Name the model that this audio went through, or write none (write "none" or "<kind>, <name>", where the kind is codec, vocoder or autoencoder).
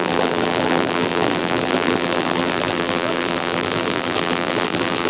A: vocoder, BigVGAN v2